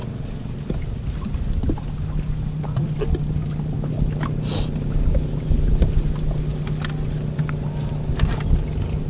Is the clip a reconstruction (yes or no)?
no